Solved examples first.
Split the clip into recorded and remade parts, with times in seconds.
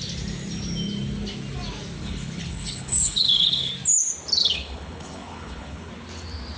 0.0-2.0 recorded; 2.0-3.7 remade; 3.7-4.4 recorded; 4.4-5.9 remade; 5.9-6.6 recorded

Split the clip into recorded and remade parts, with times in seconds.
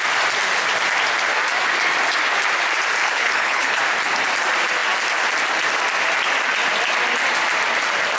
0.0-3.0 recorded; 3.0-3.8 remade; 3.8-8.2 recorded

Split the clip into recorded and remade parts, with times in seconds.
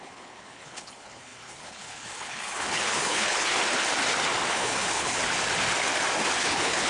0.0-3.5 remade; 3.5-4.5 recorded; 4.5-5.2 remade; 5.2-6.4 recorded; 6.4-6.9 remade